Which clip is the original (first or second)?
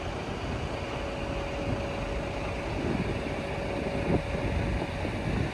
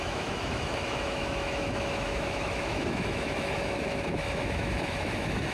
first